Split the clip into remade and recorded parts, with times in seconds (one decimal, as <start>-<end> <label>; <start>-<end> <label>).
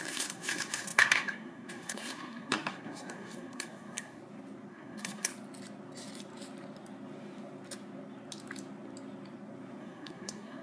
0.0-4.2 remade; 4.2-4.7 recorded; 4.7-5.3 remade; 5.3-9.8 recorded; 9.8-10.6 remade